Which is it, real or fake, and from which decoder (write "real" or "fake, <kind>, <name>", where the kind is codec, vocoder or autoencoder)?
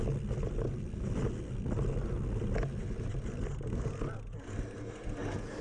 real